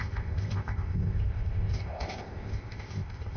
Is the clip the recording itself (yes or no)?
no